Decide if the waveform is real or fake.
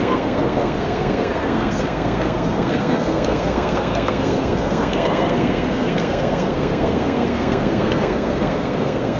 fake